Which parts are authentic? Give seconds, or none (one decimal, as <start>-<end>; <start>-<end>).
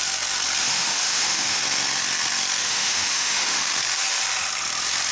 0.0-0.6; 1.6-2.6; 3.6-5.1